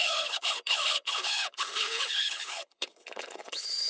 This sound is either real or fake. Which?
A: fake